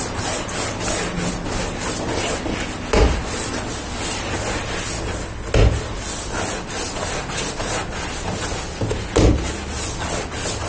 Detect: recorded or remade recorded